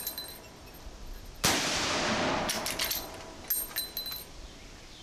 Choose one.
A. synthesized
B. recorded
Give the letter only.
B